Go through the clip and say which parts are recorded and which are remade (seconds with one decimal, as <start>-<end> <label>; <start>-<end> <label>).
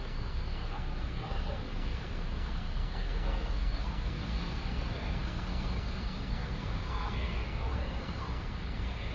0.0-9.1 remade